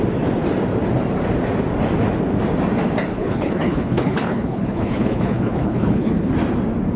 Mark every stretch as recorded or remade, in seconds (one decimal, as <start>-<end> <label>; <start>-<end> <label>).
0.0-3.1 recorded; 3.1-6.3 remade; 6.3-7.0 recorded